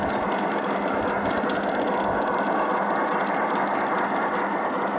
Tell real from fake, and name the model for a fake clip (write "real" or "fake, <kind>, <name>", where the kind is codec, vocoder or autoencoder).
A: real